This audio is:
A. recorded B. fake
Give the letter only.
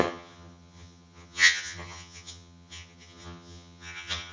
B